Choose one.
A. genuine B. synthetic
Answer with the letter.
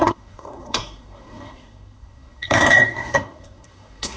B